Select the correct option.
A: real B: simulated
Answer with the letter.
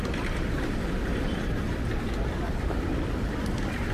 B